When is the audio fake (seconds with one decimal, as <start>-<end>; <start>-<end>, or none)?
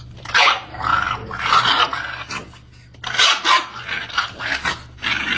none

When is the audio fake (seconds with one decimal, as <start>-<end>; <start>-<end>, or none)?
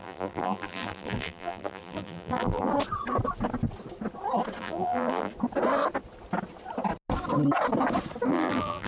0.0-2.7; 4.6-5.3; 8.3-8.9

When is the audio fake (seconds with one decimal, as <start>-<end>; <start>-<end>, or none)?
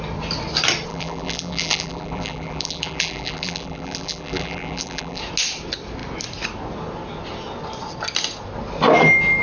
0.9-5.2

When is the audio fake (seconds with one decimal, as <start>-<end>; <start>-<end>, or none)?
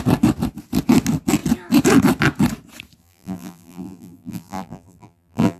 3.0-5.6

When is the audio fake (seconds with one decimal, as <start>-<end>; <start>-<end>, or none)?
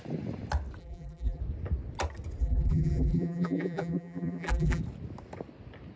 0.8-1.4; 2.4-4.8